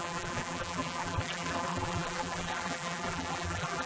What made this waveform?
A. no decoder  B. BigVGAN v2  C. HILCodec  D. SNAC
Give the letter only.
B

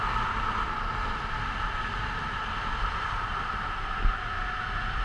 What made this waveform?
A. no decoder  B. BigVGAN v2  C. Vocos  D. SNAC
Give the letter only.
A